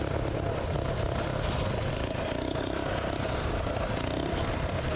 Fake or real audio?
real